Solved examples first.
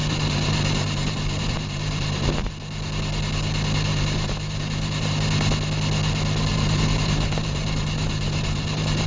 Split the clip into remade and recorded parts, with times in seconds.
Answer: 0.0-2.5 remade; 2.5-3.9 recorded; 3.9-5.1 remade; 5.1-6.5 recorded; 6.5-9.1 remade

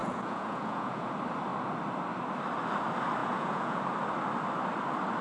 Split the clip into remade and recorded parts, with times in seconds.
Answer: 0.0-1.1 remade; 1.1-3.2 recorded; 3.2-3.8 remade; 3.8-5.2 recorded